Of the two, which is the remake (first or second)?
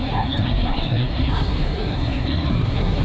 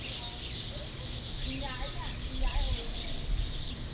first